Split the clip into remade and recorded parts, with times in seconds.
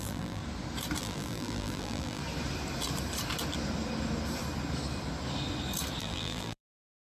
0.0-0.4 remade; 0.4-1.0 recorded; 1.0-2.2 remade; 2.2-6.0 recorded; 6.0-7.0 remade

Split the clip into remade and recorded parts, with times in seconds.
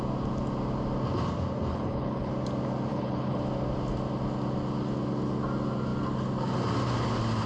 0.0-1.7 recorded; 1.7-2.3 remade; 2.3-2.9 recorded; 2.9-3.4 remade; 3.4-7.5 recorded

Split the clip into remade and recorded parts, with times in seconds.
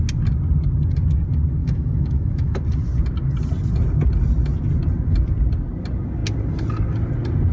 0.0-1.6 recorded; 1.6-2.6 remade; 2.6-7.5 recorded